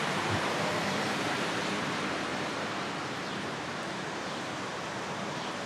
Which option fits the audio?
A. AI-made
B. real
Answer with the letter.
A